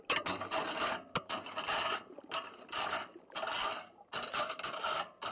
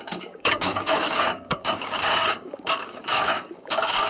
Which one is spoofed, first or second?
second